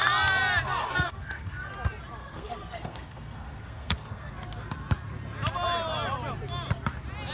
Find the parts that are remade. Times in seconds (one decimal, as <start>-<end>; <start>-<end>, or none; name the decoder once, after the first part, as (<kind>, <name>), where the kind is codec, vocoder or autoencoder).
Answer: 0.8-1.7 (codec, SNAC); 2.2-4.3